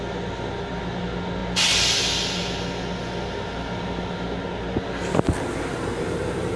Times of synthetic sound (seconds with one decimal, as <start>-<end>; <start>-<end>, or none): none